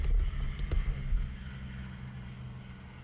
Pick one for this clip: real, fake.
real